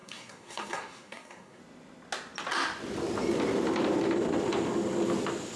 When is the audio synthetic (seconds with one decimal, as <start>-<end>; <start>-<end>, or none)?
0.0-1.6